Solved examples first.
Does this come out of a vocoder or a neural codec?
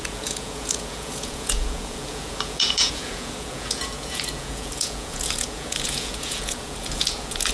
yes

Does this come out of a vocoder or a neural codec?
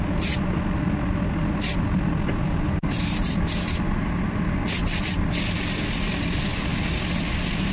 no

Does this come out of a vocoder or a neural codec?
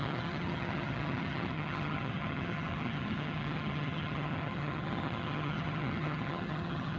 yes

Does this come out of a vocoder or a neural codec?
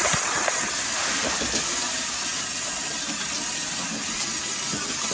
no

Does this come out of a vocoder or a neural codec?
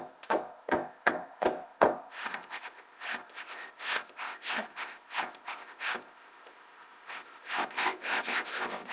yes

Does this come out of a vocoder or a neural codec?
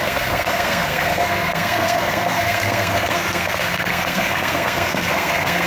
yes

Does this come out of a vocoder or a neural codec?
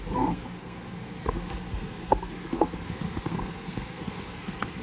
yes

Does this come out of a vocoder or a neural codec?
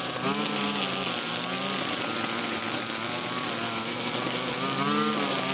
no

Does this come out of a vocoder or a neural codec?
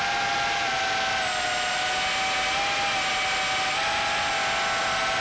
no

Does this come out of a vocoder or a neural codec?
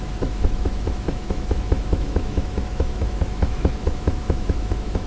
yes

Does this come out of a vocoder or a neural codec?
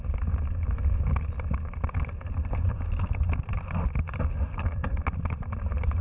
no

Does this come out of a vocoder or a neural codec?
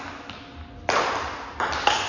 no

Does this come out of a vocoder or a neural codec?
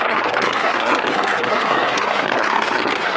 yes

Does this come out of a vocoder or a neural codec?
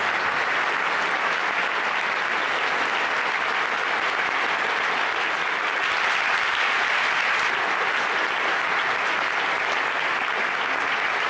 no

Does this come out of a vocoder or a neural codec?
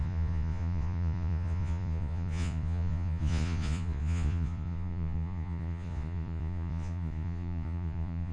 yes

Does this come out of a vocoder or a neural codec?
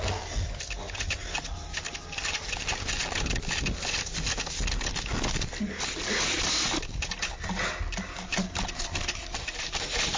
no